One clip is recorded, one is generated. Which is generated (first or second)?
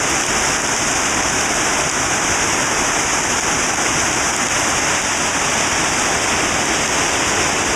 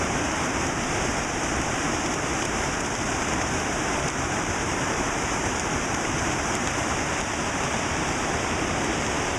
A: second